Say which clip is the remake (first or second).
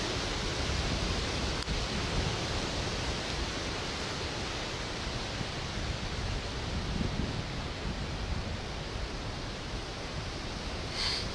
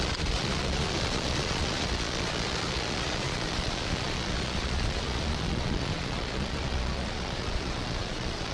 second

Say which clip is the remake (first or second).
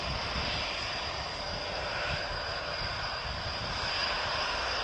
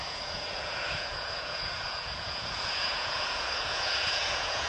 second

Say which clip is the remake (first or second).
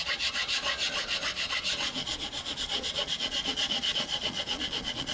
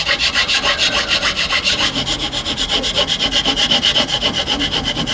first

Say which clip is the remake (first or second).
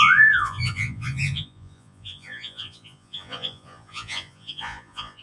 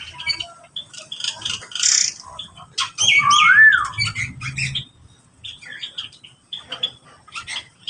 first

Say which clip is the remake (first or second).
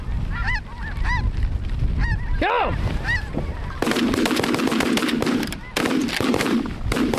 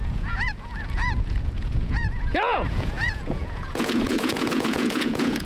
second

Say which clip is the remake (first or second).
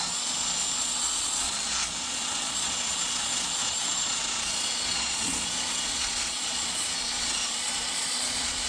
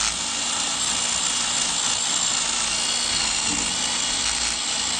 first